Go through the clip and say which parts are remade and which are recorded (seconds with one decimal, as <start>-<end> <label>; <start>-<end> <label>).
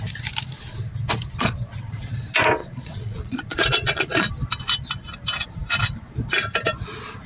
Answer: 0.0-2.6 recorded; 2.6-4.3 remade; 4.3-7.3 recorded